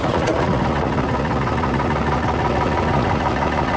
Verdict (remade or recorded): remade